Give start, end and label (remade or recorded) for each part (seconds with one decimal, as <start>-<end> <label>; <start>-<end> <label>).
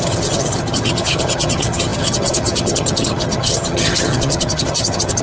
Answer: 0.0-5.2 remade